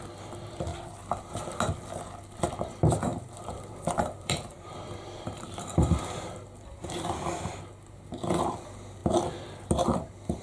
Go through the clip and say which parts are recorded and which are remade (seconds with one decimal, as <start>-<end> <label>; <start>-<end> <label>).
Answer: 0.0-3.1 recorded; 3.1-7.6 remade; 7.6-9.0 recorded; 9.0-10.4 remade